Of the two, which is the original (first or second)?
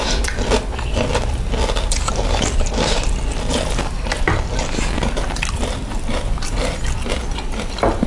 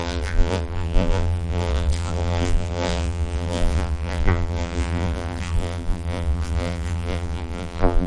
first